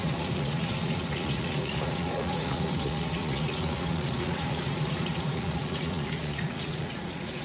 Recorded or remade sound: remade